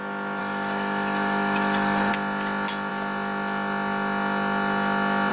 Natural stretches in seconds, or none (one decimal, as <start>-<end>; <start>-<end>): 0.0-0.4; 2.1-5.3